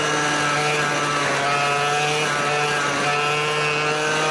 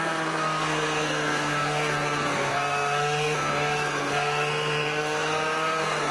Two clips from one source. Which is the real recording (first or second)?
first